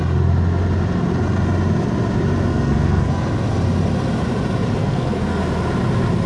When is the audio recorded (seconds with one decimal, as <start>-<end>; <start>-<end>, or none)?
0.0-2.5; 3.1-4.8; 5.4-6.3